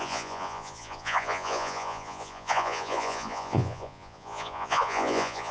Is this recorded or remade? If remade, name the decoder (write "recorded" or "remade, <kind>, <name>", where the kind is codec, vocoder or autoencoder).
remade, vocoder, Vocos